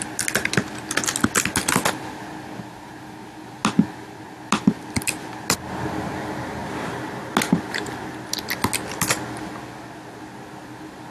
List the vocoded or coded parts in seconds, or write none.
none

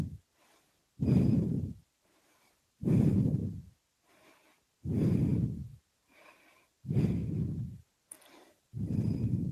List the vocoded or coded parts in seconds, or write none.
0.0-3.4; 4.1-7.2; 8.2-9.5

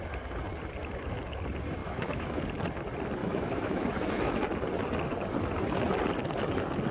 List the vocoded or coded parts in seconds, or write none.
1.8-2.4; 3.2-4.4

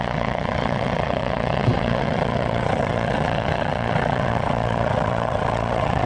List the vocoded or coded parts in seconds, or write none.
0.0-6.1

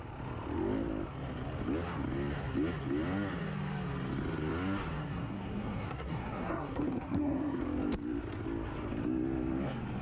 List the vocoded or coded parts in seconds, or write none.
5.0-7.6

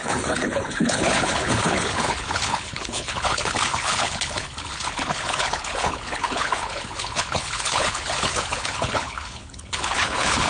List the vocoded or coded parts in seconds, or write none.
0.0-10.5